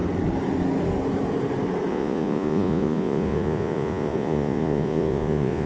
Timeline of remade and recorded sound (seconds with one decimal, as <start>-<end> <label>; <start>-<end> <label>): 0.0-1.9 recorded; 1.9-5.7 remade

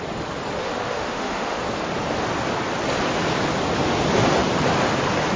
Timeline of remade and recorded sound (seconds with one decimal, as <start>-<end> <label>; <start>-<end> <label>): 0.0-0.6 recorded; 0.6-1.6 remade; 1.6-5.4 recorded

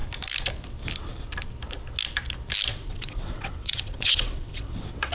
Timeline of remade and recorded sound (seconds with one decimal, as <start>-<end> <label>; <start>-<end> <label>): 0.0-2.7 recorded; 2.7-5.1 remade